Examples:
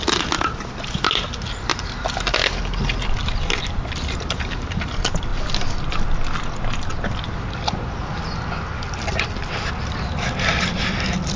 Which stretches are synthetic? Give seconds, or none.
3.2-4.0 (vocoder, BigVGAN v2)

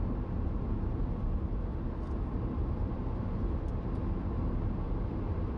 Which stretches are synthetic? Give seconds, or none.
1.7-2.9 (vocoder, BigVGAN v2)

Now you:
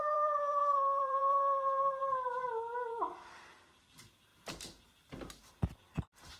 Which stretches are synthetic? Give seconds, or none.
0.0-4.3 (vocoder, BigVGAN v2); 5.5-6.4